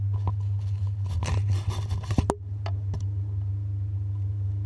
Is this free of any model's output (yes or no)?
yes